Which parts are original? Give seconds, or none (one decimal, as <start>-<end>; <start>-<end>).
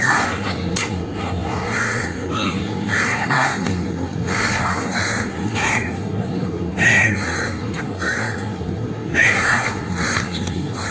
none